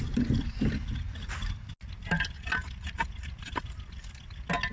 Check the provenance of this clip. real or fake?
real